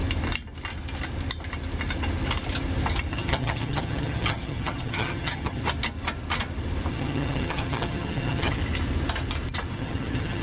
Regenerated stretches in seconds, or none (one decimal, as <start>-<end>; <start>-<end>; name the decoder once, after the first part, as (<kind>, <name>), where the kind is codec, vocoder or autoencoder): 3.1-5.6 (vocoder, HiFi-GAN); 6.9-8.6; 9.7-10.4